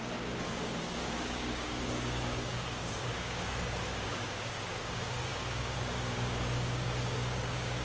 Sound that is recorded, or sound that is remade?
remade